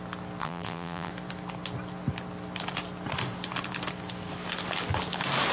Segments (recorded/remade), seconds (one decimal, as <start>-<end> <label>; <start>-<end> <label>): 0.0-0.4 recorded; 0.4-1.1 remade; 1.1-5.5 recorded